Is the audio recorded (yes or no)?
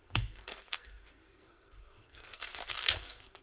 no